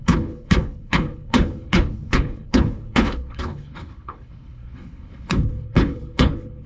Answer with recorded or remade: remade